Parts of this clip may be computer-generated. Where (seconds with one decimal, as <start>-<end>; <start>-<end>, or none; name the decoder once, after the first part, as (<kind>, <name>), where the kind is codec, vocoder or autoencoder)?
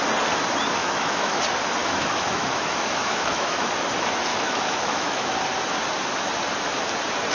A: 0.8-1.4 (autoencoder, DAC-VAE); 1.8-3.7; 4.3-5.3